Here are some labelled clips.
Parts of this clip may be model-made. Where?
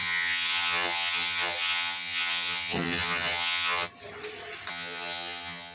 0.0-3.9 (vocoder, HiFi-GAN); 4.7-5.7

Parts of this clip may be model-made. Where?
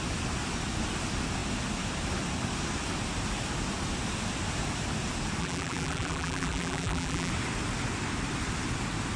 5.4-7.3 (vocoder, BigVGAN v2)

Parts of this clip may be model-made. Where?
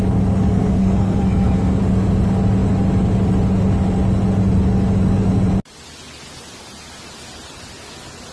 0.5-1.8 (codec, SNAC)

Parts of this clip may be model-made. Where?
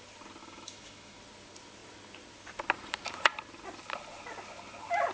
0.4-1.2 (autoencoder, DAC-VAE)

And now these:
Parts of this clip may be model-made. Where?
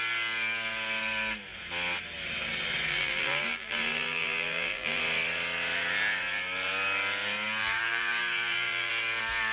2.9-5.0 (vocoder, BigVGAN v2); 7.6-8.9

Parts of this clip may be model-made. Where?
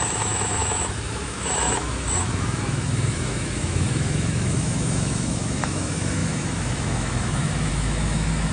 0.0-8.5 (autoencoder, DAC-VAE)